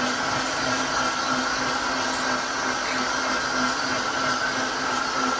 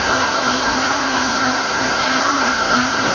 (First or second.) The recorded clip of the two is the first